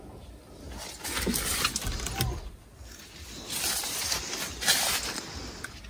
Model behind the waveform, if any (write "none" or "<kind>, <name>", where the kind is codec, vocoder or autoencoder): none